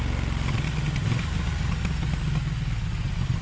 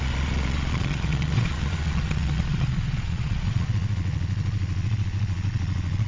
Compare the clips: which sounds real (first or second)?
first